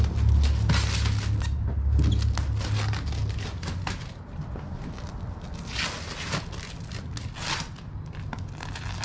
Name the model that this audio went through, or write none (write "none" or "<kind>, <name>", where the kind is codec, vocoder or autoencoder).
none